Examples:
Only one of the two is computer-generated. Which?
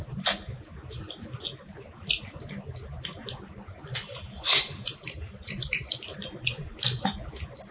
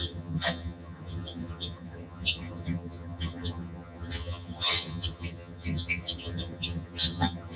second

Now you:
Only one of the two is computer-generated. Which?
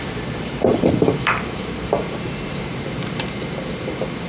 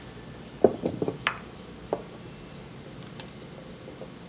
first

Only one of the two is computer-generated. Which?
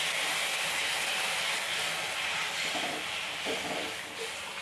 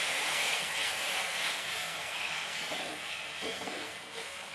second